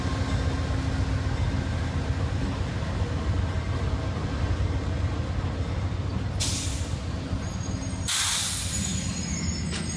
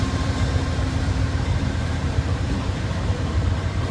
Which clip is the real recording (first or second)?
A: first